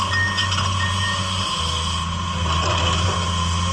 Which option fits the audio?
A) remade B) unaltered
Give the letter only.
B